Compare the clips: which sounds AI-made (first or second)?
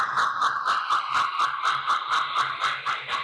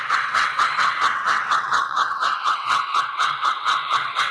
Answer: second